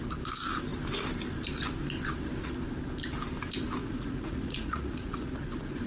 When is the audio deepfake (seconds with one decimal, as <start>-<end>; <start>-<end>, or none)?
3.8-5.3